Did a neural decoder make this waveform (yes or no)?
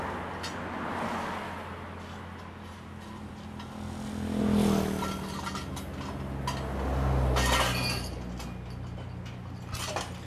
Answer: no